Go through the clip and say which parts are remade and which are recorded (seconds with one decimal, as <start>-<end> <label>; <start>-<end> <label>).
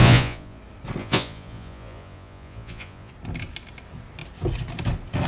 0.0-0.6 remade; 0.6-1.0 recorded; 1.0-3.1 remade; 3.1-5.3 recorded